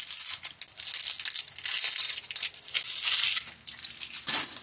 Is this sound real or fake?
real